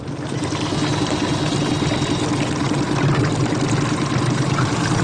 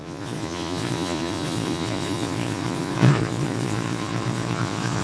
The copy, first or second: second